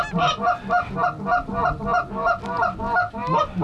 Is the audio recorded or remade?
recorded